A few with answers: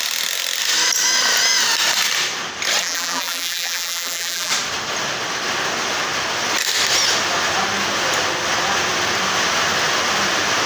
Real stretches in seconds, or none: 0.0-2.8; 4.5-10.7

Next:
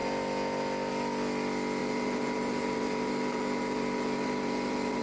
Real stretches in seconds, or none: 0.0-1.8

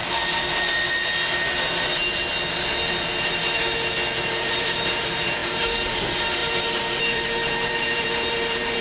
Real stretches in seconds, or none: 0.0-4.2